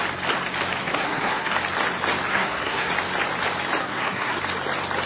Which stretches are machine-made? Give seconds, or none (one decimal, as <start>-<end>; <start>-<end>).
0.8-1.5; 2.3-2.9; 3.8-4.4